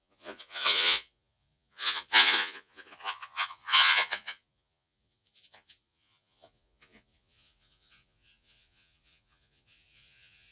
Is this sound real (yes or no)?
no